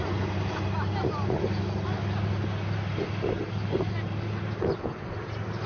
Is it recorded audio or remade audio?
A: recorded